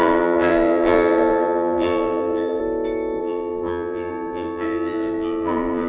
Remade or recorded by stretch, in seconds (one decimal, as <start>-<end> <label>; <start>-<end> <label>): 0.0-2.6 remade; 2.6-3.2 recorded; 3.2-5.9 remade